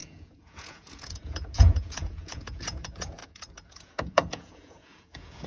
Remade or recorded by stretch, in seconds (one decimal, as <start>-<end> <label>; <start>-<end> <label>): 0.0-5.5 remade